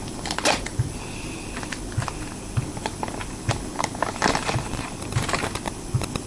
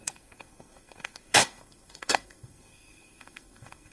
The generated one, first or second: second